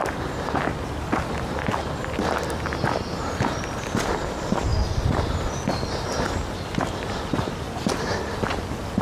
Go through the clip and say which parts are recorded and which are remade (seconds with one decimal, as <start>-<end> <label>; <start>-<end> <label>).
0.0-9.0 recorded

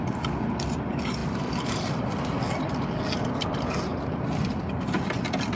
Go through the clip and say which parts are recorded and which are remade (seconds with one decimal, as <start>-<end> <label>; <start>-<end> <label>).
0.0-1.2 recorded; 1.2-2.4 remade; 2.4-5.6 recorded

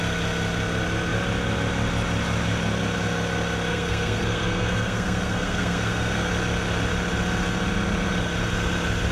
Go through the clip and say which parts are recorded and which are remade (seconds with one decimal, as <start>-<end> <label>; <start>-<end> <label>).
0.0-3.7 recorded; 3.7-6.3 remade; 6.3-9.1 recorded

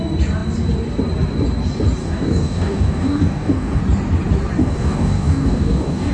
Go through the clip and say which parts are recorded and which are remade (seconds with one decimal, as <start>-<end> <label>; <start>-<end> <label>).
0.0-2.0 recorded; 2.0-3.8 remade; 3.8-4.6 recorded; 4.6-6.1 remade

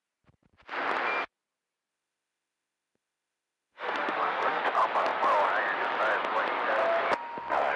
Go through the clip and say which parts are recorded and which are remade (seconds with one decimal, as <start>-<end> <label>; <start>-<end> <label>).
0.0-1.9 recorded; 1.9-4.6 remade; 4.6-7.8 recorded